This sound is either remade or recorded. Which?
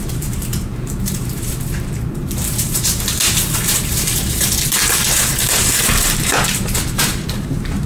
remade